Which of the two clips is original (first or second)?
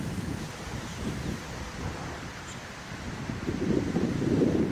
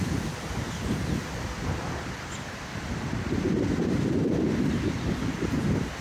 first